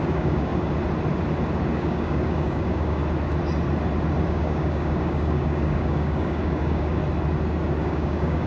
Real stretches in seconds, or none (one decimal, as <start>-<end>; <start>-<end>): 0.5-1.7; 3.0-4.3; 7.0-7.8